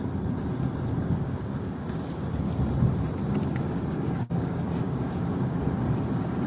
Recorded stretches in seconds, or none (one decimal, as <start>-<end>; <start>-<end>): 0.0-0.9; 2.1-3.4; 5.6-6.5